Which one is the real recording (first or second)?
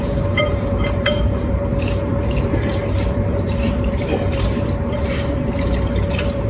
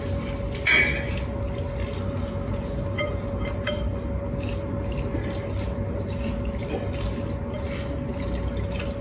second